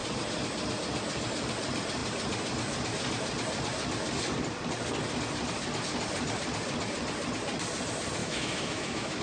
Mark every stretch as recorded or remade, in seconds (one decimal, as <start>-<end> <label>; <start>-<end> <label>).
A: 0.0-8.2 recorded; 8.2-9.2 remade

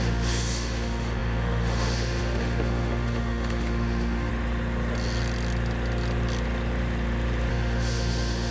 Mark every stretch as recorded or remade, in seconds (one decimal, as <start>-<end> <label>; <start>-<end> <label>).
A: 0.0-4.3 remade; 4.3-7.5 recorded; 7.5-8.5 remade

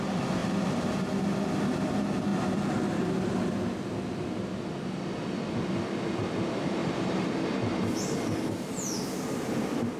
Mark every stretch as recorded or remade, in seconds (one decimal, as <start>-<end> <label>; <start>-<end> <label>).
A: 0.0-6.8 recorded; 6.8-7.5 remade; 7.5-10.0 recorded

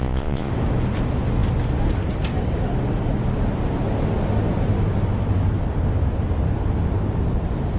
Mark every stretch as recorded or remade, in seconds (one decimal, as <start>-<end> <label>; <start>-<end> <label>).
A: 0.0-0.5 remade; 0.5-7.8 recorded

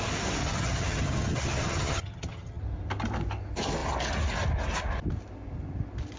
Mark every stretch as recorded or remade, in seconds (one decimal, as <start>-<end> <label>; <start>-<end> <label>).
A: 0.0-0.4 recorded; 0.4-2.6 remade; 2.6-6.2 recorded

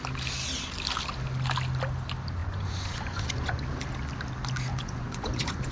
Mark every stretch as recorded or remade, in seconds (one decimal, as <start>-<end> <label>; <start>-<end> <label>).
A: 0.0-2.4 recorded; 2.4-3.7 remade; 3.7-4.7 recorded; 4.7-5.7 remade

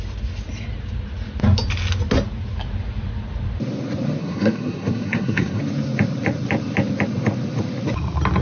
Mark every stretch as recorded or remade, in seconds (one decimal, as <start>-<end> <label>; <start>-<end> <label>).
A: 0.0-4.2 recorded; 4.2-5.6 remade; 5.6-8.4 recorded

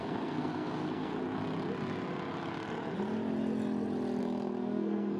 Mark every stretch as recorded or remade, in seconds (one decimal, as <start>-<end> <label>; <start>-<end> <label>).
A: 0.0-1.1 remade; 1.1-4.2 recorded; 4.2-5.2 remade